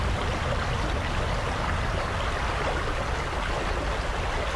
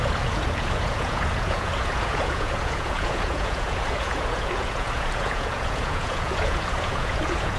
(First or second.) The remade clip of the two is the second